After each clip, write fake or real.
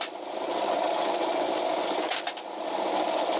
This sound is real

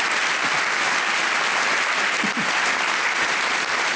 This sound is real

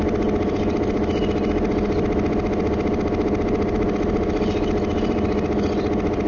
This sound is real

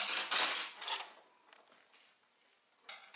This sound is real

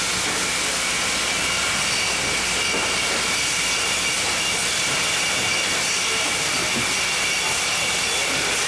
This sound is real